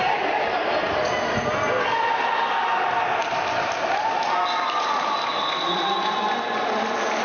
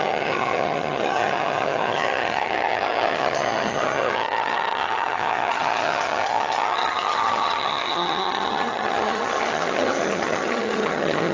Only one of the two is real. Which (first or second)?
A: first